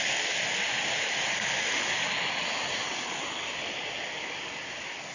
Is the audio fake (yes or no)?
no